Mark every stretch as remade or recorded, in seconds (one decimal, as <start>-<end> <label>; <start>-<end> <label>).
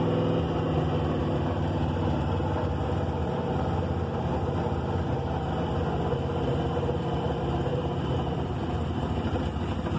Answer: 0.0-1.2 recorded; 1.2-2.4 remade; 2.4-3.2 recorded; 3.2-5.5 remade; 5.5-7.7 recorded; 7.7-9.4 remade; 9.4-10.0 recorded